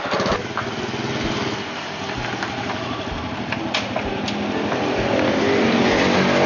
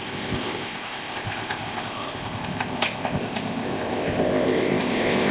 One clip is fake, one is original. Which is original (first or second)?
first